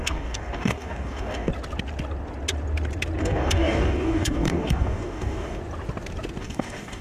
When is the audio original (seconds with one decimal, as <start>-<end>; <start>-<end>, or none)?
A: 1.5-3.2; 5.6-6.4